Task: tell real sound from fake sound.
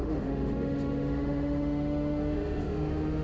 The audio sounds fake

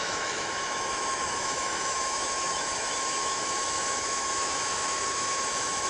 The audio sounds fake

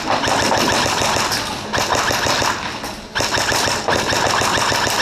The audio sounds real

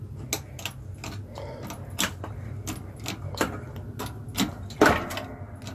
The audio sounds real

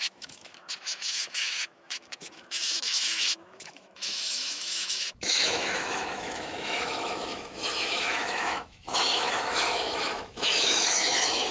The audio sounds fake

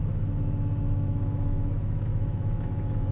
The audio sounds fake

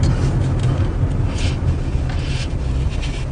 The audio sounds real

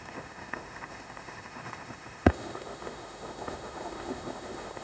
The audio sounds fake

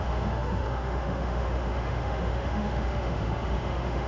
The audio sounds fake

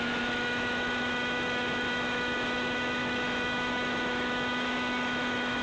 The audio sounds fake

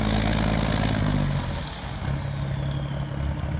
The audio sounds real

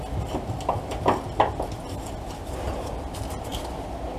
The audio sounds real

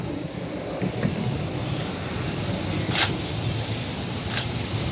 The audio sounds real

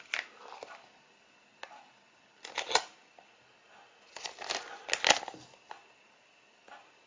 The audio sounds real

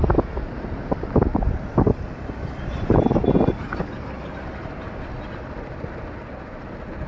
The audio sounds real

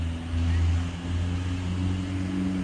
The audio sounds real